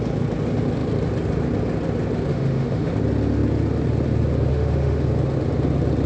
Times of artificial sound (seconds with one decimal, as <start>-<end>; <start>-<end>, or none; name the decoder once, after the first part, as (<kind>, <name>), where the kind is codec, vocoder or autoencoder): 2.3-2.9 (autoencoder, DAC-VAE); 4.5-5.0